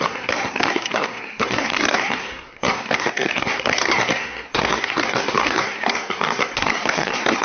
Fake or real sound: fake